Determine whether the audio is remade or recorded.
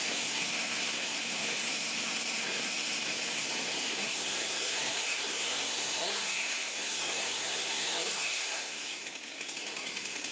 remade